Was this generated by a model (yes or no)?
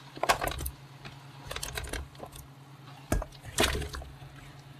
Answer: no